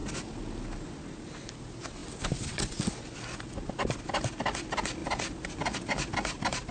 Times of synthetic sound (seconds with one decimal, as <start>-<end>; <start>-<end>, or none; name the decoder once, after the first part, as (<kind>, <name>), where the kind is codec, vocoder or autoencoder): none